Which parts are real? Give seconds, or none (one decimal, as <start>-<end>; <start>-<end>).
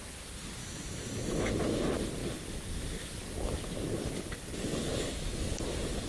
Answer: 0.0-0.6; 1.5-6.1